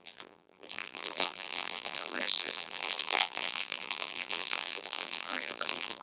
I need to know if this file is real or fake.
fake